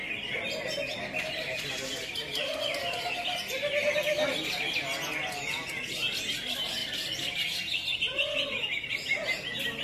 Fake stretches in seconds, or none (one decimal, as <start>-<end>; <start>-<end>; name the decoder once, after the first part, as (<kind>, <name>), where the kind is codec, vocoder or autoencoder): 0.0-1.7 (vocoder, BigVGAN v2)